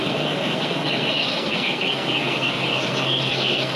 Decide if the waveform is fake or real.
fake